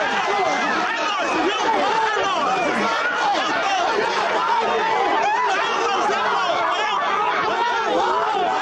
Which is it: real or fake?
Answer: real